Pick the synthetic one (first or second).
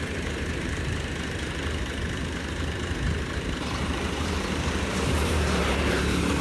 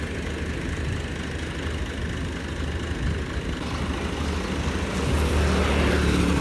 first